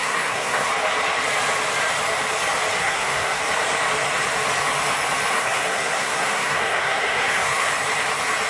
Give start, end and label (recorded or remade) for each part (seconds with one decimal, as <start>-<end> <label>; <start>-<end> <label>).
0.0-0.7 remade; 0.7-2.8 recorded; 2.8-3.4 remade; 3.4-5.3 recorded; 5.3-7.7 remade; 7.7-8.5 recorded